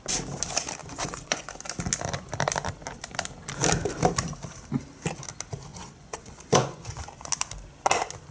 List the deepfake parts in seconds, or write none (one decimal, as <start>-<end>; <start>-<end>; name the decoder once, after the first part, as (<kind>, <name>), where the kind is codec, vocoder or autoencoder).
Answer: 0.8-1.5 (vocoder, Vocos); 5.7-7.0